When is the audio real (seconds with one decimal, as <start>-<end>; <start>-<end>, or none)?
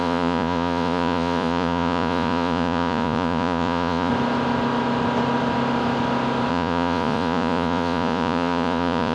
4.1-6.5